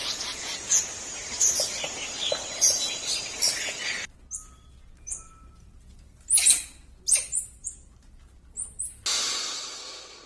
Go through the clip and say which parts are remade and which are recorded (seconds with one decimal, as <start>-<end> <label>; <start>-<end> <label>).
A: 0.0-0.8 remade; 0.8-10.3 recorded